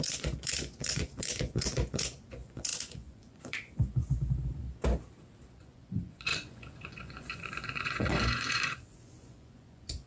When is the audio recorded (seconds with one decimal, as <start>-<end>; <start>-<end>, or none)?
4.6-5.5